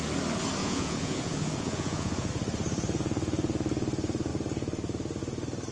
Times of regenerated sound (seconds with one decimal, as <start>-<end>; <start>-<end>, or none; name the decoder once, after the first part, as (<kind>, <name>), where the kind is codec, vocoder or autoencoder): 0.6-2.3 (vocoder, Vocos)